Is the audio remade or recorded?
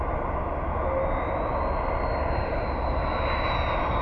recorded